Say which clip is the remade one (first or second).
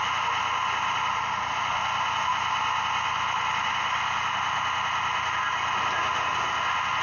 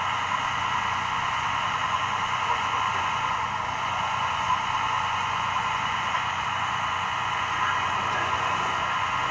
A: second